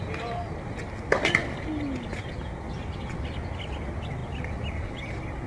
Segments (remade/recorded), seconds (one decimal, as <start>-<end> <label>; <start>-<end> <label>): 0.0-5.5 recorded